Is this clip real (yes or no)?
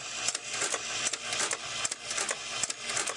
yes